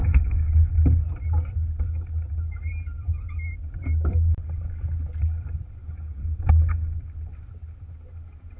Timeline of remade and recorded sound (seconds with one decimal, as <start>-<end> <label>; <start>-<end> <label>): 0.0-0.5 remade; 0.5-5.8 recorded; 5.8-7.0 remade; 7.0-8.6 recorded